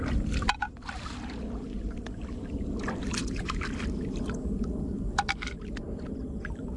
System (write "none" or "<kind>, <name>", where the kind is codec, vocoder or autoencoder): vocoder, BigVGAN v2